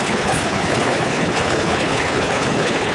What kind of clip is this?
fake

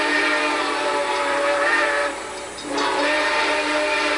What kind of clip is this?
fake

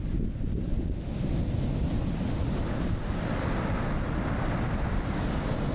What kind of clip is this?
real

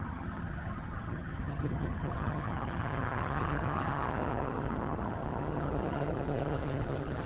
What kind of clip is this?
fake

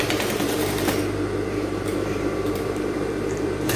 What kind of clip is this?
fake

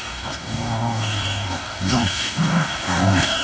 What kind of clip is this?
fake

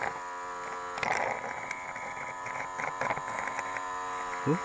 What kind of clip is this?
real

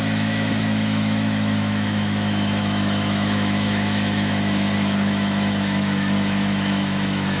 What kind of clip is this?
fake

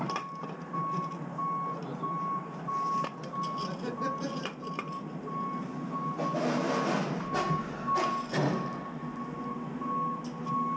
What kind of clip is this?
real